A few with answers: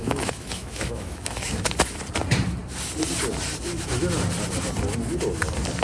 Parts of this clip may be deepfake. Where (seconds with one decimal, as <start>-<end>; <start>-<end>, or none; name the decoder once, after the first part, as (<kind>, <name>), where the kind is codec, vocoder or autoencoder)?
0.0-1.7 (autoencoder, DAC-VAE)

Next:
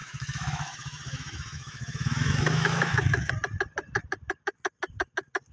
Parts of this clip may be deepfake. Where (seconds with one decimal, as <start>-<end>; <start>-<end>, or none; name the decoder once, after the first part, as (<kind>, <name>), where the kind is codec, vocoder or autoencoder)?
0.0-3.3 (autoencoder, DAC-VAE)

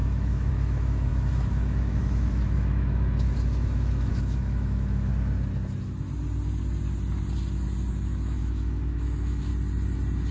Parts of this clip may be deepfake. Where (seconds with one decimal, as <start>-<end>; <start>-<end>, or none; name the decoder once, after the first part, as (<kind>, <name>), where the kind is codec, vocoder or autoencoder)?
0.0-5.1 (autoencoder, DAC-VAE); 7.9-9.5

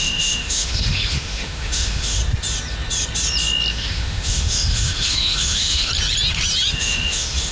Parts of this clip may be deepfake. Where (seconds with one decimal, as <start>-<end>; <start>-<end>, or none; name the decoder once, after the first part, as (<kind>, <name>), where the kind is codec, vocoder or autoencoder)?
0.0-2.2 (autoencoder, DAC-VAE); 3.7-5.9; 6.7-7.5

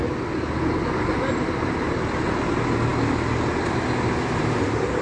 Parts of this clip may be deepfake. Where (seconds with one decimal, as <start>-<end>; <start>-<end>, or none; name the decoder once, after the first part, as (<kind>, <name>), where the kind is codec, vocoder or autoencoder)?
none